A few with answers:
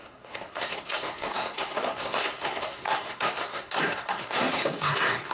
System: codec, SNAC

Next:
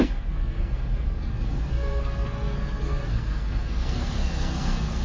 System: codec, SNAC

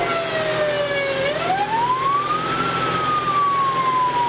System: none